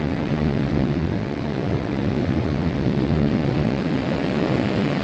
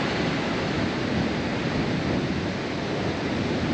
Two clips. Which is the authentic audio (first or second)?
second